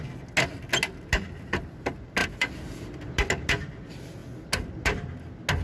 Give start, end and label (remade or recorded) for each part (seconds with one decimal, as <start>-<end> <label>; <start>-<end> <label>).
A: 0.0-5.6 recorded